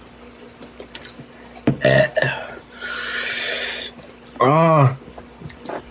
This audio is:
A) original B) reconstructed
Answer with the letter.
A